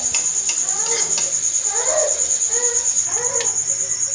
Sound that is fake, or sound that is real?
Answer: real